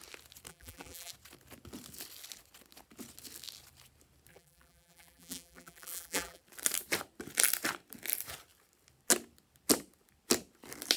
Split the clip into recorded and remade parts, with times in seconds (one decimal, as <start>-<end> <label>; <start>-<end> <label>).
0.0-0.5 recorded; 0.5-1.1 remade; 1.1-4.3 recorded; 4.3-6.4 remade; 6.4-11.0 recorded